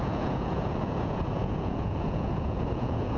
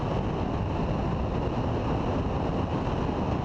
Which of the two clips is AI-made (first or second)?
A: first